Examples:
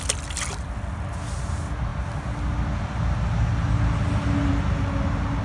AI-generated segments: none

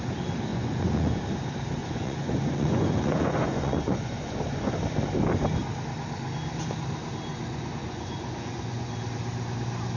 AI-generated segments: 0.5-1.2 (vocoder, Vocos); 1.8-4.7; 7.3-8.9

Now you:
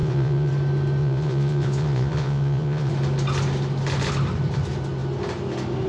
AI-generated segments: 0.0-0.5 (vocoder, Vocos); 1.0-2.9

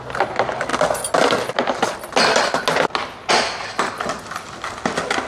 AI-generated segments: none

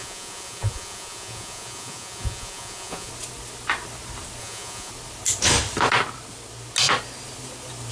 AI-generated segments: 0.0-3.1 (vocoder, Vocos); 4.4-4.9